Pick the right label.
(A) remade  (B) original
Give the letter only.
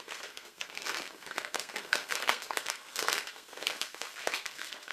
A